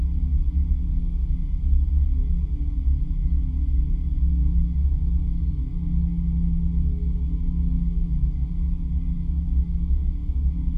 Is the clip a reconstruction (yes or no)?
no